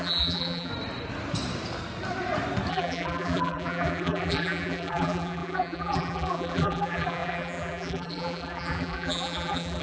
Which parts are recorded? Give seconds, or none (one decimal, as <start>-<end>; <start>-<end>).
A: 0.7-2.7